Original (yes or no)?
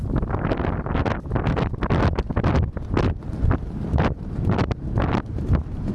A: yes